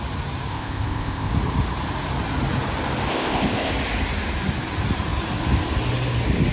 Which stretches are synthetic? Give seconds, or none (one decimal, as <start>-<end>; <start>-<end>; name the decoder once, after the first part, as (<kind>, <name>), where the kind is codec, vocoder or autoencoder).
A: 0.5-1.3 (codec, ZipCodec); 3.1-3.7